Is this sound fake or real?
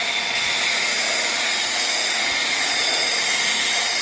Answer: fake